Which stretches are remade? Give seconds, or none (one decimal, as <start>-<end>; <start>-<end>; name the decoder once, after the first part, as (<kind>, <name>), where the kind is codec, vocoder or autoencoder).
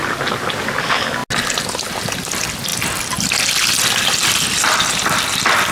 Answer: none